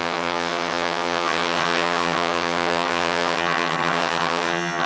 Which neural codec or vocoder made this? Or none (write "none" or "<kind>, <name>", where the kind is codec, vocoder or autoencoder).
vocoder, HiFi-GAN